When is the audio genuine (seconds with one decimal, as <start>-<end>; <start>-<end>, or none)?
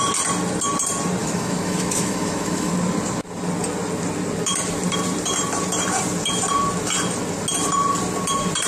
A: 0.0-1.2; 2.7-8.7